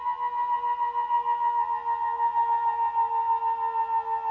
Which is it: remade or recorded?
recorded